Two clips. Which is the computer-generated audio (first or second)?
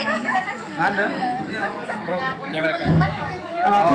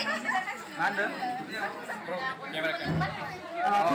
first